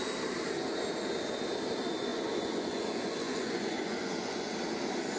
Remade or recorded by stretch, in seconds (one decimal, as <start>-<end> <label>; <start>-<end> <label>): 0.0-2.1 recorded; 2.1-4.5 remade; 4.5-5.2 recorded

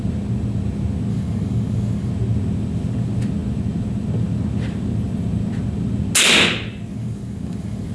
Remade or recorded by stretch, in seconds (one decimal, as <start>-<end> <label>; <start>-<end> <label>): 0.0-1.1 recorded; 1.1-2.1 remade; 2.1-6.9 recorded; 6.9-7.9 remade

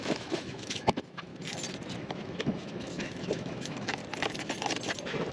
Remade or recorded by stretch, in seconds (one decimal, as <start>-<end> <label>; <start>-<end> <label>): 0.0-1.3 remade; 1.3-2.0 recorded; 2.0-4.0 remade; 4.0-5.3 recorded

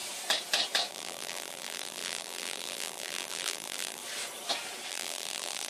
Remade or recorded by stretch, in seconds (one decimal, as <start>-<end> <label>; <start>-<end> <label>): 0.0-0.9 recorded; 0.9-4.0 remade; 4.0-4.9 recorded; 4.9-5.7 remade

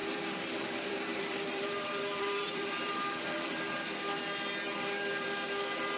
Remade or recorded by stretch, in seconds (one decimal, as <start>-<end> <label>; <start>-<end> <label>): 0.0-3.6 remade; 3.6-6.0 recorded

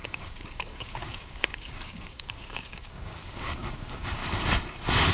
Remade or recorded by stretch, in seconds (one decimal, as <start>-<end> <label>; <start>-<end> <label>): 0.0-4.2 remade; 4.2-5.1 recorded